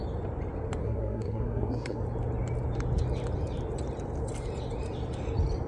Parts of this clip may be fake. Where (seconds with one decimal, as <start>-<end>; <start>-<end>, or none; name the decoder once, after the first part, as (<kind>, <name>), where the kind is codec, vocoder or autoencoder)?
0.8-2.0 (codec, SNAC)